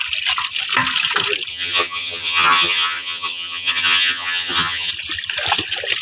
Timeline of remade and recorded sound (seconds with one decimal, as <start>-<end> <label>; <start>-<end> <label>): 0.0-1.5 recorded; 1.5-4.9 remade; 4.9-6.0 recorded